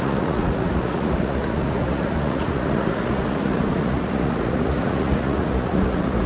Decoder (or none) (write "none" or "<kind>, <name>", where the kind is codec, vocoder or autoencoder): vocoder, Vocos